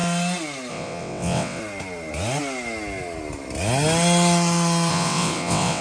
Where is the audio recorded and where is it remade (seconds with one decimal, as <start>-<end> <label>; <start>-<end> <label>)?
0.0-0.7 recorded; 0.7-1.6 remade; 1.6-4.9 recorded; 4.9-5.8 remade